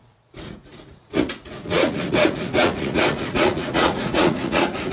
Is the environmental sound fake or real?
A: fake